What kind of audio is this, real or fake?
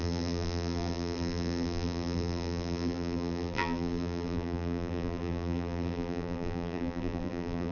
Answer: fake